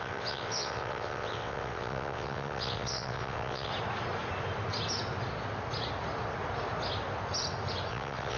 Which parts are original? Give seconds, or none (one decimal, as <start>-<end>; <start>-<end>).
3.7-7.9